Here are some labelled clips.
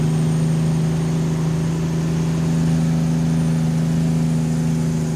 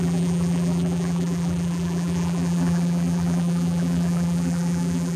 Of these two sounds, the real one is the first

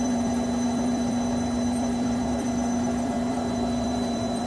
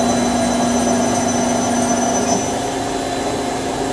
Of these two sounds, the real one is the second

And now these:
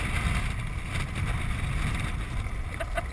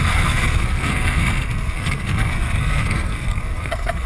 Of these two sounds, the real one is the first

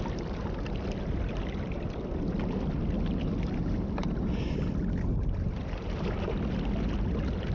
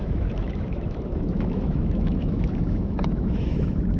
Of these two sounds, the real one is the first